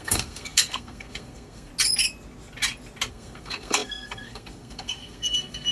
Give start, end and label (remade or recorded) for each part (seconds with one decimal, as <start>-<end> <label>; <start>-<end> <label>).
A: 0.0-1.7 remade; 1.7-3.1 recorded; 3.1-5.7 remade